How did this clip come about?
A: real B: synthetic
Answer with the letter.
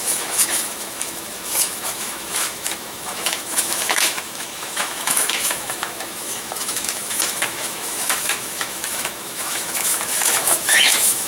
B